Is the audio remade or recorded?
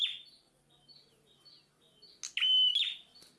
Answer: recorded